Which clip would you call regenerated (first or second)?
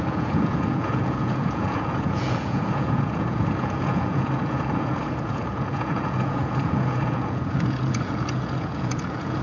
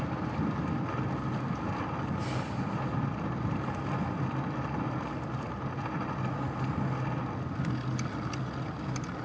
first